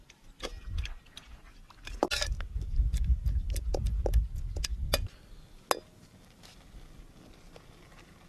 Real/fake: real